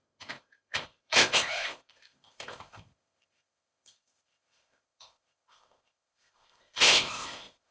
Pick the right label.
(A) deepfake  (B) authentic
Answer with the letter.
A